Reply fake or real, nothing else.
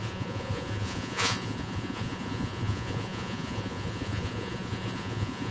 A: fake